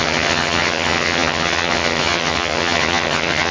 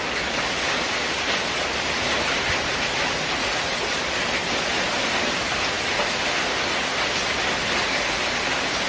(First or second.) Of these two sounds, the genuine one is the second